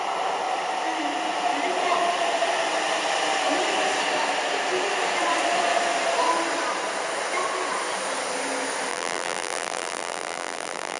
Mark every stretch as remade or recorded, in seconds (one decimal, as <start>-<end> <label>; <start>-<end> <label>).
0.0-8.9 recorded; 8.9-11.0 remade